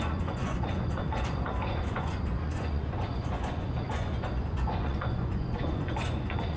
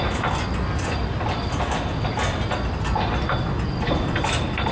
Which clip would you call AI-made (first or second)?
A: first